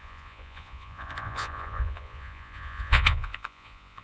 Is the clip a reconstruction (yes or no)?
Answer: yes